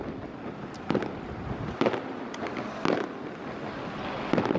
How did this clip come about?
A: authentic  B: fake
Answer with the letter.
A